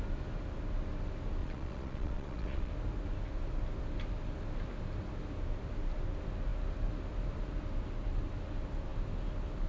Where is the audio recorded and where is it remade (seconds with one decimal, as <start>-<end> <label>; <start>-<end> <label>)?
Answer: 0.0-1.4 recorded; 1.4-2.7 remade; 2.7-9.7 recorded